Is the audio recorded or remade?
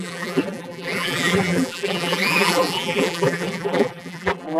remade